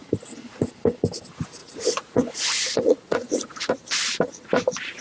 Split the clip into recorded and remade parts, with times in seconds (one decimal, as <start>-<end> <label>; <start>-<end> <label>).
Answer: 0.0-0.6 remade; 0.6-1.6 recorded; 1.6-3.7 remade; 3.7-5.0 recorded